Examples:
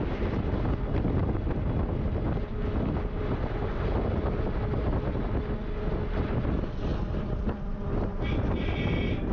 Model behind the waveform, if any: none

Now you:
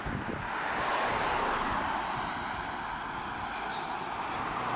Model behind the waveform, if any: none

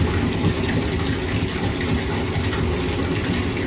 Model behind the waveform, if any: none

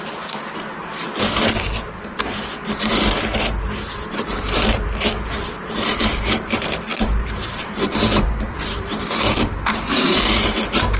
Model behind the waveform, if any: vocoder, BigVGAN v2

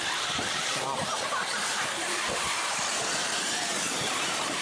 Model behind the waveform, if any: vocoder, BigVGAN v2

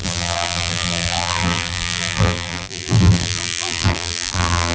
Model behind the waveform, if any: vocoder, BigVGAN v2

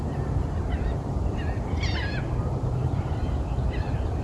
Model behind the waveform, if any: vocoder, BigVGAN v2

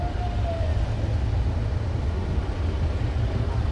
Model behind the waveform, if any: none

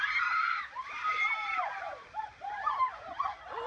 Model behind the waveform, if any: vocoder, BigVGAN v2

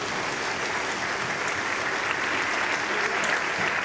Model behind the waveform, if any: none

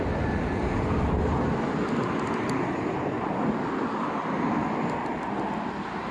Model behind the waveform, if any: none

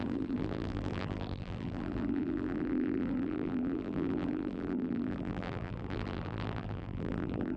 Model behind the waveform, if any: vocoder, BigVGAN v2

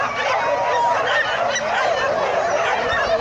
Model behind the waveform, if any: none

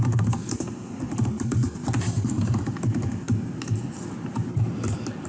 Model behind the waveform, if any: none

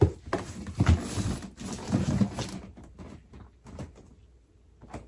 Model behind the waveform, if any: none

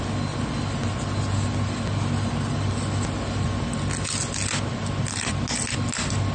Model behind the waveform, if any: none